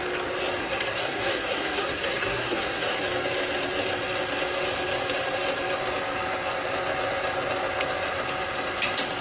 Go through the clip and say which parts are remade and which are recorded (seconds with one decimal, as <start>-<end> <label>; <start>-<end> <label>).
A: 0.0-0.6 recorded; 0.6-3.0 remade; 3.0-9.2 recorded